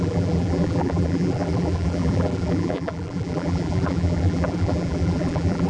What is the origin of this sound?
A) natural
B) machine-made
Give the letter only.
B